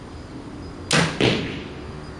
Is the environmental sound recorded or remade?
recorded